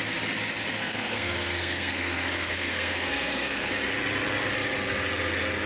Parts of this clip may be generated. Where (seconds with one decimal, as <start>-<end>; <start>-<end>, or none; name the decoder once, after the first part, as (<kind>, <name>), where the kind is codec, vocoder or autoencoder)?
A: 0.8-3.7 (codec, SNAC)